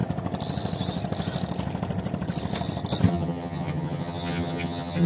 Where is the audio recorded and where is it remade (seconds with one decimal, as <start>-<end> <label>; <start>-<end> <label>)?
0.0-3.1 recorded; 3.1-5.1 remade

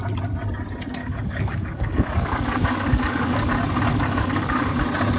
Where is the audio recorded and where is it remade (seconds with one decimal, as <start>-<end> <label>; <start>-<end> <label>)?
0.0-1.0 recorded; 1.0-3.5 remade; 3.5-3.9 recorded; 3.9-4.8 remade; 4.8-5.2 recorded

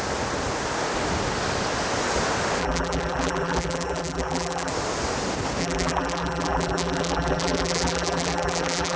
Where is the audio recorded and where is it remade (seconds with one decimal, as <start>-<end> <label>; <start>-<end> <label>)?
0.0-2.6 recorded; 2.6-4.7 remade; 4.7-5.6 recorded; 5.6-9.0 remade